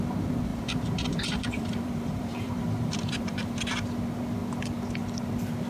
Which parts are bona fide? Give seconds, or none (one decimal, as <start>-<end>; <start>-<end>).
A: 0.0-0.5; 3.9-5.7